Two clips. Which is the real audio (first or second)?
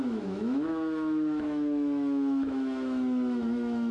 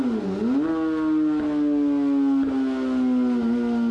second